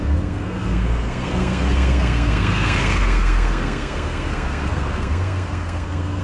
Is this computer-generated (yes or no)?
yes